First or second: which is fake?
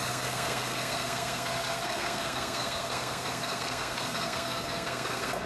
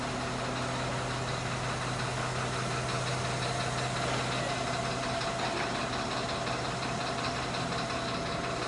first